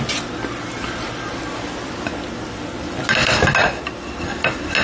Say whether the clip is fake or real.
real